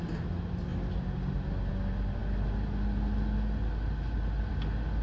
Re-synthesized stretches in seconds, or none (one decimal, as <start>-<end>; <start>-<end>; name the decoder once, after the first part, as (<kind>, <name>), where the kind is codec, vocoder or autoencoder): none